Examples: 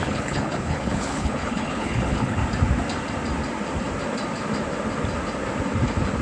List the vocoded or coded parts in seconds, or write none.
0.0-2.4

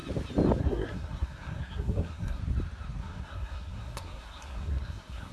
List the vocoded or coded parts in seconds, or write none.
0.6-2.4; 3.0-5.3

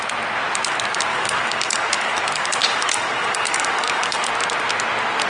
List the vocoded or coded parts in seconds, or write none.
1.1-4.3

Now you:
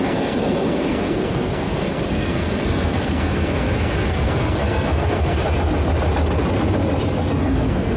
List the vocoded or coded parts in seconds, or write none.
0.0-5.4; 7.2-8.0

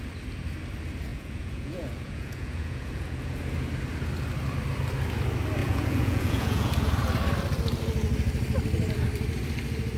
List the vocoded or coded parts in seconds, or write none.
1.1-3.4; 5.6-6.7

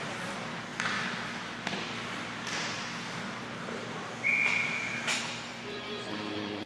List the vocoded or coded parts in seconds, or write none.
5.5-6.7

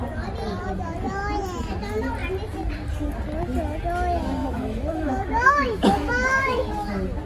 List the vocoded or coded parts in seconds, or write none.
4.4-6.7

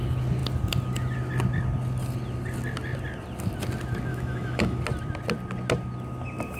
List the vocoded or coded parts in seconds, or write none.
4.1-4.8